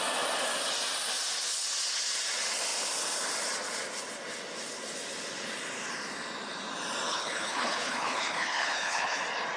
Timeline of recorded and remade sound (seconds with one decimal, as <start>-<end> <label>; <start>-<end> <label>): 0.0-7.1 recorded; 7.1-9.2 remade; 9.2-9.6 recorded